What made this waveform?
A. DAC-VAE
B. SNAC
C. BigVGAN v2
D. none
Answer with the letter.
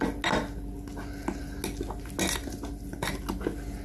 D